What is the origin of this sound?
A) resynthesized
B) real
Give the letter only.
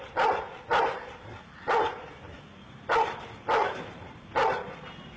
A